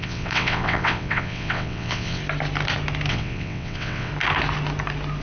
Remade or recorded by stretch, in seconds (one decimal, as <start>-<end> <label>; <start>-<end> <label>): 0.0-2.2 remade; 2.2-3.1 recorded; 3.1-4.1 remade; 4.1-5.2 recorded